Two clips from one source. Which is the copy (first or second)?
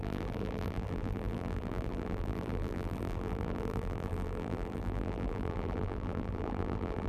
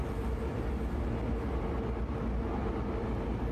first